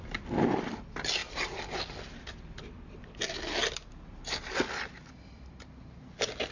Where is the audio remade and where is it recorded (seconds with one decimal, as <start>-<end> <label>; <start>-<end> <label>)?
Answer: 0.0-6.5 recorded